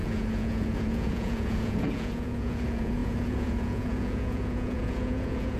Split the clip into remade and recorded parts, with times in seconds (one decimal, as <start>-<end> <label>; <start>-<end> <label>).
0.0-5.6 remade

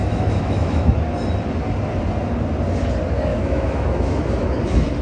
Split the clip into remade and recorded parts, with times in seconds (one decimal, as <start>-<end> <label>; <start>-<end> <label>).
0.0-0.9 remade; 0.9-3.3 recorded; 3.3-5.0 remade

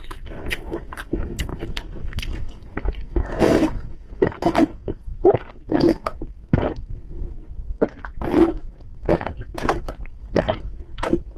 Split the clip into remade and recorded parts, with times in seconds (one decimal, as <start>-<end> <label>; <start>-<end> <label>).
0.0-11.4 remade

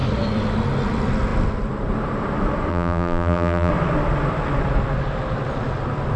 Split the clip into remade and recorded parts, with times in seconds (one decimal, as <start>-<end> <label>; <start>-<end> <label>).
0.0-2.7 recorded; 2.7-3.7 remade; 3.7-6.2 recorded

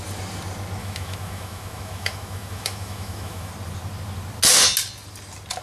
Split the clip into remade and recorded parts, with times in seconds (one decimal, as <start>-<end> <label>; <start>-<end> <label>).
0.0-0.8 recorded; 0.8-3.5 remade; 3.5-5.6 recorded

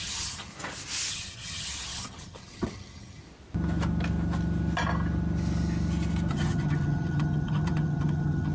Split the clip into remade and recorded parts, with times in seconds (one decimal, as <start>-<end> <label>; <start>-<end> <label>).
0.0-0.5 remade; 0.5-1.1 recorded; 1.1-3.2 remade; 3.2-6.3 recorded; 6.3-8.5 remade